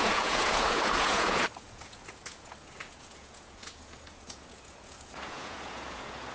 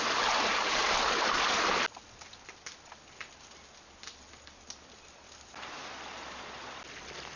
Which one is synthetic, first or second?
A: first